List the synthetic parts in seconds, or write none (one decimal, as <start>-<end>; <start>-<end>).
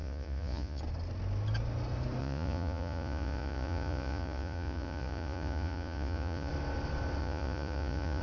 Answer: 0.0-0.8; 2.2-6.5; 7.2-8.2